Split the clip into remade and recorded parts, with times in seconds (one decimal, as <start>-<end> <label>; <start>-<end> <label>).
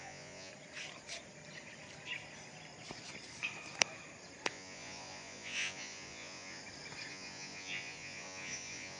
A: 0.0-0.5 remade; 0.5-4.5 recorded; 4.5-6.6 remade; 6.6-7.1 recorded; 7.1-9.0 remade